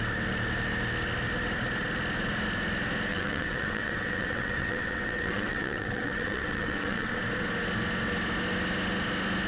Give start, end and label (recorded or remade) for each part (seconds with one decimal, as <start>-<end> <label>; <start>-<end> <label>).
0.0-3.1 recorded; 3.1-7.1 remade; 7.1-9.5 recorded